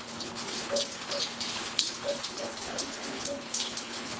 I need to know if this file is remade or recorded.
remade